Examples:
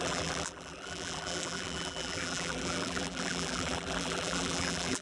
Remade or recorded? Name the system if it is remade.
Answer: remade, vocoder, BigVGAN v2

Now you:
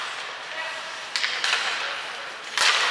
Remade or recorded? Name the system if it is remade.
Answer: recorded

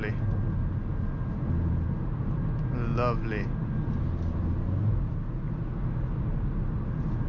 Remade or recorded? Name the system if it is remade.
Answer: recorded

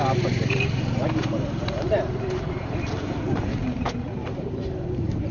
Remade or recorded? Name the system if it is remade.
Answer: remade, vocoder, BigVGAN v2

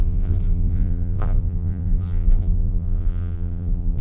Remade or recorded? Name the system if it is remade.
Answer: remade, vocoder, BigVGAN v2